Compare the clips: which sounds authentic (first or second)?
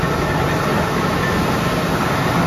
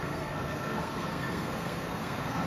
first